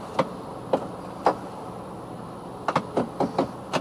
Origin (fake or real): real